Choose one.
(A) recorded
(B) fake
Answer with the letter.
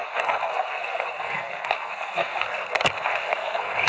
B